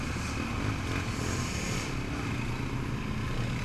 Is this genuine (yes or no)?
yes